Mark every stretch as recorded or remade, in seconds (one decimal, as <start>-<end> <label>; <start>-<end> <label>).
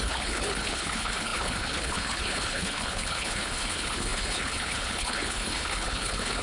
0.0-6.4 remade